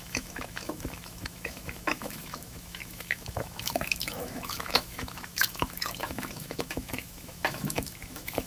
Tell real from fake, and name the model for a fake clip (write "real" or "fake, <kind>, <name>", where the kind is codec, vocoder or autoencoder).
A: fake, autoencoder, DAC-VAE